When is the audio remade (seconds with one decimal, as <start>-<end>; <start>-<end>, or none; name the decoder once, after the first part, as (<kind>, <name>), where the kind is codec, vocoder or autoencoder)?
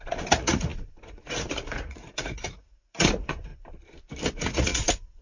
0.0-3.5 (vocoder, Vocos); 4.3-5.2